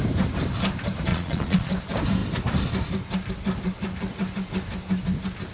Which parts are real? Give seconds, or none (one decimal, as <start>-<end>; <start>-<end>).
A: 0.0-1.1; 1.7-5.5